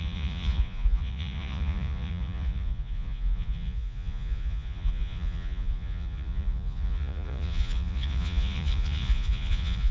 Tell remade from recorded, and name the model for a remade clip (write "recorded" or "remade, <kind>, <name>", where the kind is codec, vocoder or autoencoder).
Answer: remade, vocoder, Vocos